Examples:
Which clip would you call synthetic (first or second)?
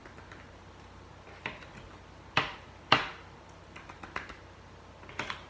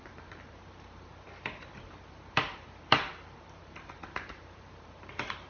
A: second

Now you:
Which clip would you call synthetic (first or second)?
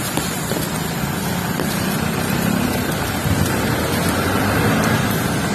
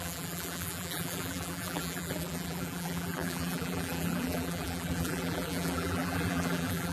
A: second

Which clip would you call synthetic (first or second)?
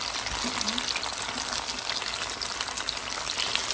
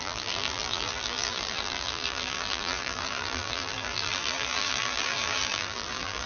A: second